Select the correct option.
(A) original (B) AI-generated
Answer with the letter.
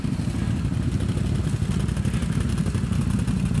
A